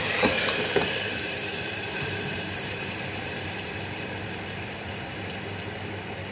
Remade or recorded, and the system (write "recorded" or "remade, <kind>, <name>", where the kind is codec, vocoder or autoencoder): remade, vocoder, BigVGAN v2